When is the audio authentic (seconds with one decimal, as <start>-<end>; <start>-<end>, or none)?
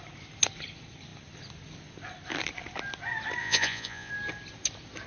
0.0-3.4; 4.1-5.1